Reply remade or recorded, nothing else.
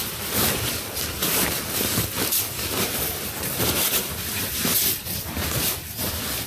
remade